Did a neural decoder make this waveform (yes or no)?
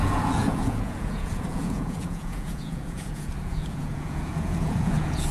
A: yes